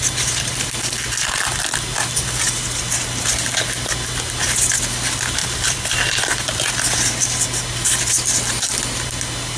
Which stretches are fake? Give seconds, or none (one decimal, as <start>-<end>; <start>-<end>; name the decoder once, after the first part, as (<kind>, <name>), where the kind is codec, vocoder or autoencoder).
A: 5.4-6.7 (vocoder, BigVGAN v2)